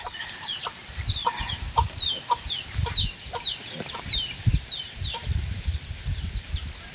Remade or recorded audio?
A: remade